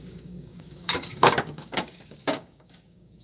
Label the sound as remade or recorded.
remade